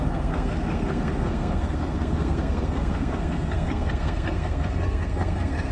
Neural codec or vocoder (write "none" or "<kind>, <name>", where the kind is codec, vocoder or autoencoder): codec, SNAC